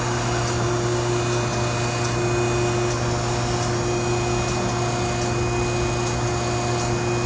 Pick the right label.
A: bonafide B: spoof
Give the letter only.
A